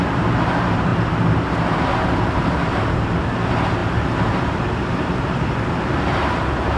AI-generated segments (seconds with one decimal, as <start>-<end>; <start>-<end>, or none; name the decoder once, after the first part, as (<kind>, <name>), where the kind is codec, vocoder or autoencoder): 0.0-6.8 (vocoder, BigVGAN v2)